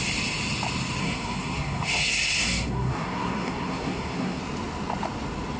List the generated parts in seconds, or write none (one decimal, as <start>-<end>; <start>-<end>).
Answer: 1.0-4.4